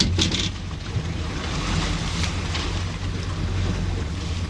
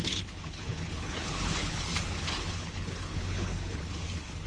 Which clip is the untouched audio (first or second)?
first